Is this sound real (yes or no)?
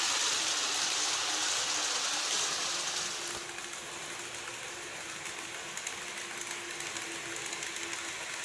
yes